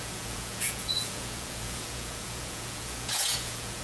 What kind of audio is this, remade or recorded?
remade